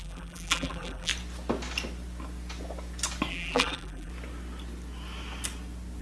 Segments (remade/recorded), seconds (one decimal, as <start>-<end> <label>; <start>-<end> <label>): 0.0-1.1 remade; 1.1-3.3 recorded; 3.3-4.1 remade; 4.1-6.0 recorded